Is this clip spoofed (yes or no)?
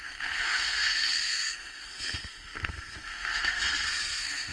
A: yes